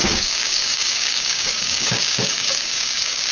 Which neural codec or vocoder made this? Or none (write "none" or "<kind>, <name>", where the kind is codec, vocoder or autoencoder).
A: codec, DAC